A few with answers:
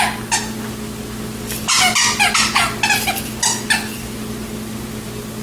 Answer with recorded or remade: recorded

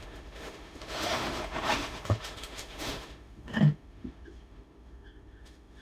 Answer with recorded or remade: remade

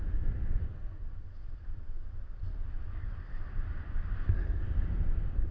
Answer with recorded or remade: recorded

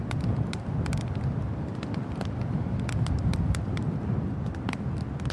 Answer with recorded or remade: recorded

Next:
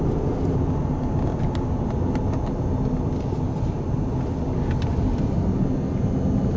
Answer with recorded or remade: recorded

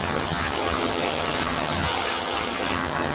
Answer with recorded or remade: remade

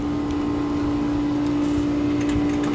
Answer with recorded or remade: recorded